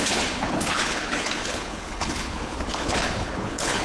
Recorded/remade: remade